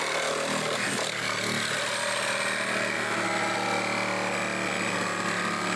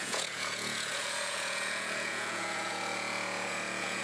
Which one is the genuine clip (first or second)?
first